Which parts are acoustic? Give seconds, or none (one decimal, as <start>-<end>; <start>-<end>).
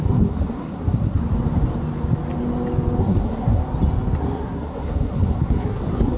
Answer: 1.2-3.0; 3.6-4.2